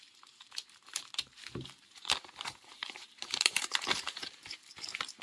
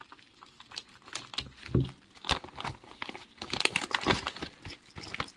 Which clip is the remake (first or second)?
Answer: first